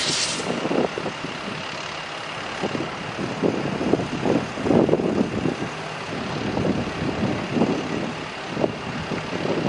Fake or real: real